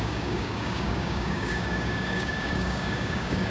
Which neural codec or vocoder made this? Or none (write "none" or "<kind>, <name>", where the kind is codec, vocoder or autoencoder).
codec, DAC